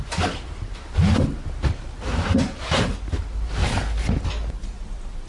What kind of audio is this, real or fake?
real